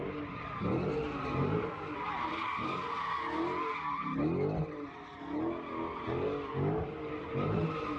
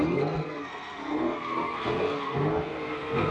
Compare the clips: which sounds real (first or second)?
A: first